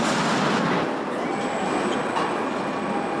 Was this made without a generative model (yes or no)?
yes